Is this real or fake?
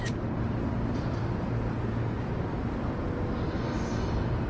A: fake